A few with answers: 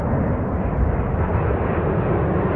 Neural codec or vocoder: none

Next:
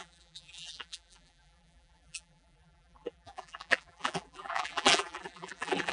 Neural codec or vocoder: vocoder, BigVGAN v2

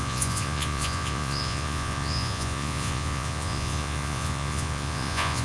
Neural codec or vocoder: vocoder, Vocos